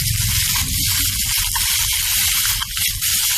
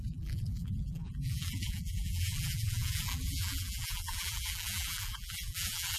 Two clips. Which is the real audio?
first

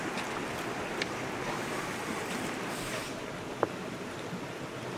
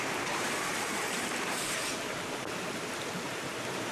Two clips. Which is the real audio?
first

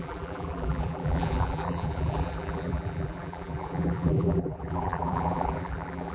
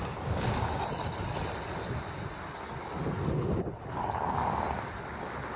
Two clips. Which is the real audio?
second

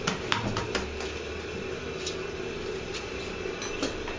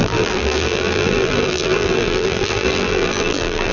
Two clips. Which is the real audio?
first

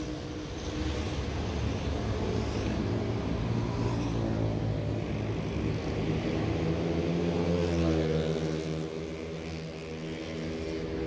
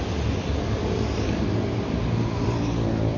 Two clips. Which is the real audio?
first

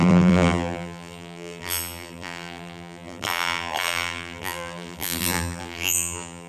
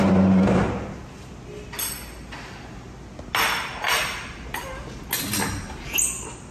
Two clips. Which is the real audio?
second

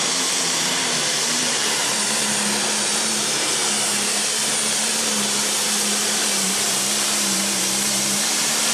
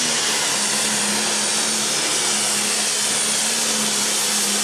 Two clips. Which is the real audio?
second